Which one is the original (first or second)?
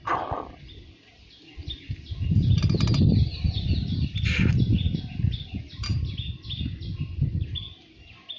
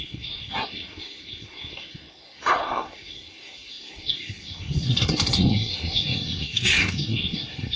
first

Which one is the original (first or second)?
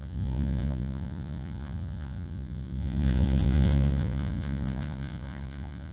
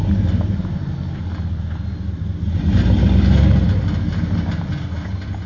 second